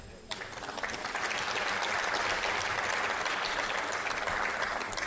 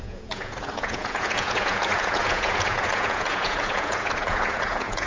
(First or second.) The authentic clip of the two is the first